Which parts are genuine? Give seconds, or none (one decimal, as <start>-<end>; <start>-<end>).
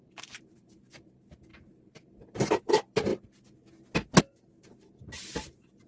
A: 3.1-4.2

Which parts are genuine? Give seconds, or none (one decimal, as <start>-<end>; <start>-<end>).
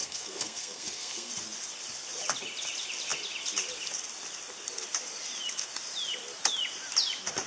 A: 1.3-7.5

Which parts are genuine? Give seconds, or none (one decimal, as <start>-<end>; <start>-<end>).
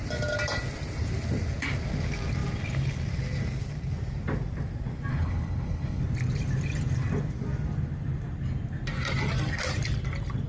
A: 0.0-5.1; 6.0-10.5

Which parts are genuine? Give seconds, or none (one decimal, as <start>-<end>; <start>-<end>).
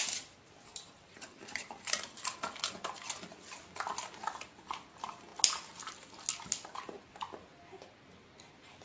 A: 0.0-0.7; 2.4-8.8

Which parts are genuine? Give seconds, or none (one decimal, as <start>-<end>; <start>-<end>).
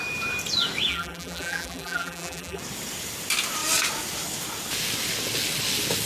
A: 0.0-0.9; 2.6-6.1